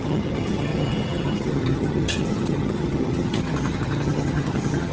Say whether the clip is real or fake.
fake